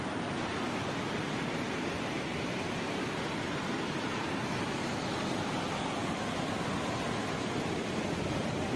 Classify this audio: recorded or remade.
recorded